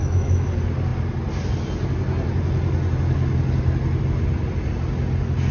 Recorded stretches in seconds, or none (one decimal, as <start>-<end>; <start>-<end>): 0.5-5.5